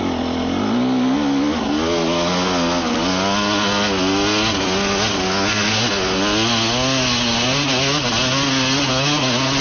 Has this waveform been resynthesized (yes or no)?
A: no